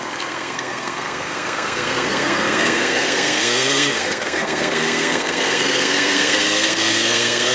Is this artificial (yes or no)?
yes